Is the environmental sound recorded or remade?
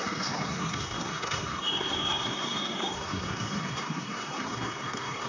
remade